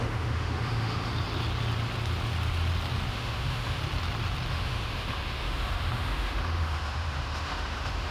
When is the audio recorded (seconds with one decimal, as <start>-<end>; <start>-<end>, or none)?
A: 1.1-3.1; 3.8-4.5